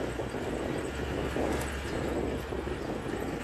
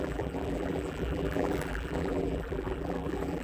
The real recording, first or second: first